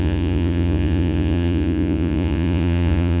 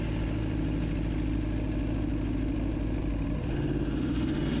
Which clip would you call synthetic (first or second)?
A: first